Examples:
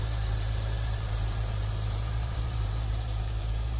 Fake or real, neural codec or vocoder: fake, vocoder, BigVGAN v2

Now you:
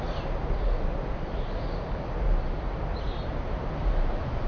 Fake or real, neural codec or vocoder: real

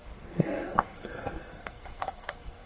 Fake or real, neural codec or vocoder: fake, codec, SNAC